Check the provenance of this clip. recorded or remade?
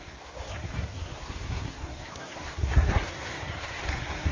remade